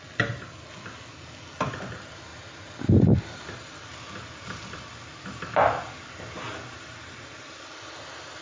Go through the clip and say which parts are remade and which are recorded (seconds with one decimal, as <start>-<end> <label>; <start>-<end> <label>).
0.0-8.4 recorded